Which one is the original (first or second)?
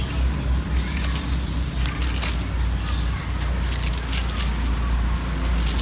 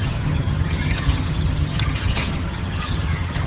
first